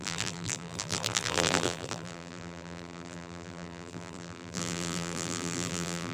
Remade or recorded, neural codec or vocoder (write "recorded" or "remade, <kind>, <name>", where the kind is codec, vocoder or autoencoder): remade, vocoder, BigVGAN v2